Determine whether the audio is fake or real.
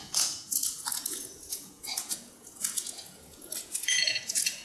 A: fake